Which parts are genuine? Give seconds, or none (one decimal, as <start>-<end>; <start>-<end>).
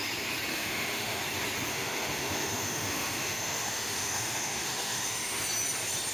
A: 0.0-0.5; 1.2-1.7; 5.4-6.1